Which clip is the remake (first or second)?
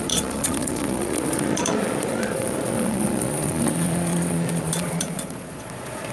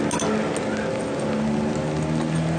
first